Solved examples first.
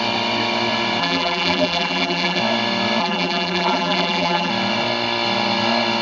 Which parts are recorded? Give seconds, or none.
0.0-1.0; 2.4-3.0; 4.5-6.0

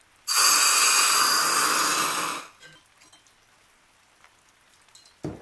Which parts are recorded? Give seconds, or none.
0.0-5.4

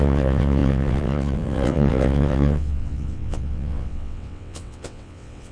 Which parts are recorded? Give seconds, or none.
none

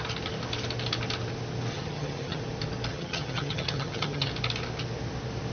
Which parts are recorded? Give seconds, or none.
0.0-1.7; 2.4-2.9; 4.3-5.5

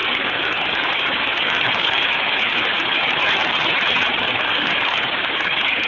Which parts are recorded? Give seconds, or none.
3.2-4.2

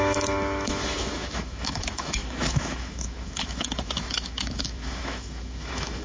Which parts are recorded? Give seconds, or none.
none

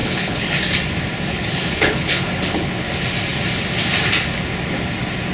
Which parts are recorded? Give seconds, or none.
0.5-1.3; 2.7-5.3